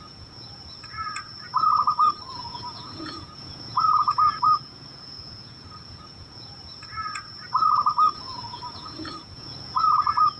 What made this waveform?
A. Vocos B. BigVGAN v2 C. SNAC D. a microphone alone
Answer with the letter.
A